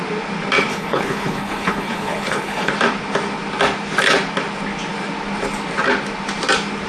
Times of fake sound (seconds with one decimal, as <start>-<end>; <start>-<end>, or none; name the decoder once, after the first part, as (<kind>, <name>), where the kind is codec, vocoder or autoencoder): 0.7-2.7 (codec, HILCodec)